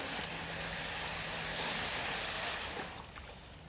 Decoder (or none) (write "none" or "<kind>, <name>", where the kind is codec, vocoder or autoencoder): none